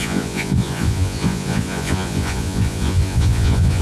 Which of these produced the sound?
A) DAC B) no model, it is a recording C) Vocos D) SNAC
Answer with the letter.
C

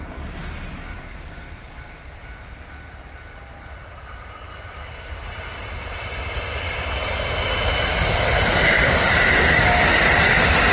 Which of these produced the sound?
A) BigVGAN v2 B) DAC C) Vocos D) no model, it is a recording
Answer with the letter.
A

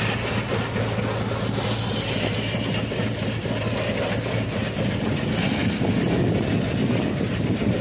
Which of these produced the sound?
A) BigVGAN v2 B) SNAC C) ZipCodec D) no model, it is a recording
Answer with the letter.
D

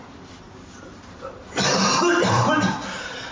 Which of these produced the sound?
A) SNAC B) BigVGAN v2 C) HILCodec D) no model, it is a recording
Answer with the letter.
B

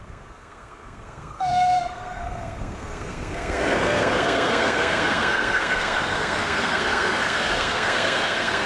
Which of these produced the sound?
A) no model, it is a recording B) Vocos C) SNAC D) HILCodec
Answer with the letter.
C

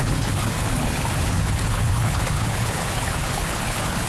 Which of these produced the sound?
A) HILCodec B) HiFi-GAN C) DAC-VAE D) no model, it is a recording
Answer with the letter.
A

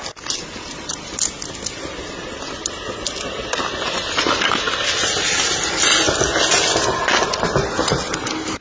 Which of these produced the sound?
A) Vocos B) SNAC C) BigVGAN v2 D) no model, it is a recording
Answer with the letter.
D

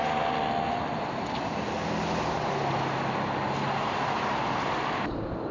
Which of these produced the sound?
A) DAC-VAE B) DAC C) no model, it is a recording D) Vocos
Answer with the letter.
C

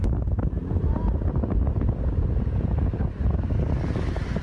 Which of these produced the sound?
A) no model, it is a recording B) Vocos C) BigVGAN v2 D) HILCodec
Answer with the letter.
A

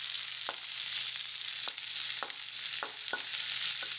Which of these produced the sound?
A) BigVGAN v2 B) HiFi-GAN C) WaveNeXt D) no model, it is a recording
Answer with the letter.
D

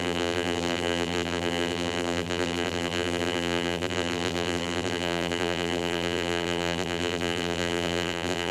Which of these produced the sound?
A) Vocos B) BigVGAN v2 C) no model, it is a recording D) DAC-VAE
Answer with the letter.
B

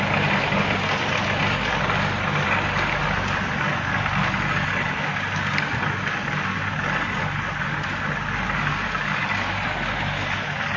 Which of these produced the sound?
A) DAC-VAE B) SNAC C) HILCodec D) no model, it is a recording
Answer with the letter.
D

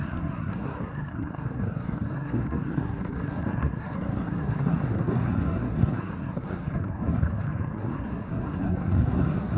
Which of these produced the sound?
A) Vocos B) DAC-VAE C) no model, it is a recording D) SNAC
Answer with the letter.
D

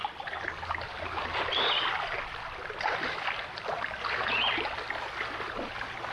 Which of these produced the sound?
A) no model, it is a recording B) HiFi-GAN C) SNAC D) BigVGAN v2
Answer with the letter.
A